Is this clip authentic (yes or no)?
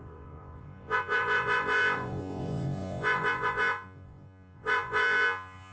no